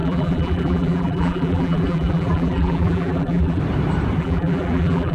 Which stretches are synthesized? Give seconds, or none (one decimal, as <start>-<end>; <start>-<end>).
0.0-3.6; 4.2-5.1